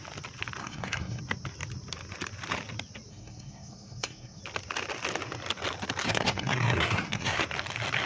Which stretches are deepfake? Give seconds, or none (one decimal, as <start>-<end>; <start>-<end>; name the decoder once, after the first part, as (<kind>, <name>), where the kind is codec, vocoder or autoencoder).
0.6-1.2 (codec, SNAC); 3.1-4.4; 6.0-7.4